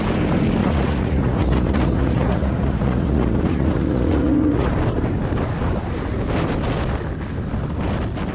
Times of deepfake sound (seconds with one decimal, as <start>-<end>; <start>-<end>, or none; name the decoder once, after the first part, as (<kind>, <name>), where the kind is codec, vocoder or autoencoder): 0.6-4.7 (vocoder, Vocos)